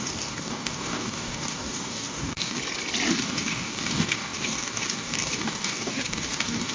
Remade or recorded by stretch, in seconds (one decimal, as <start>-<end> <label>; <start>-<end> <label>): 0.0-2.6 remade; 2.6-3.1 recorded; 3.1-6.7 remade